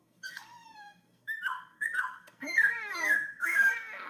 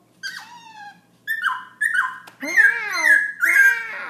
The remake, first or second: first